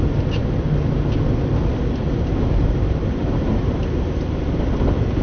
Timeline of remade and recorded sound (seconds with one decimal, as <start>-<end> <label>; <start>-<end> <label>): 0.0-2.0 recorded; 2.0-4.6 remade; 4.6-5.2 recorded